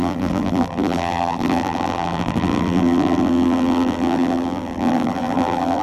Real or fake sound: fake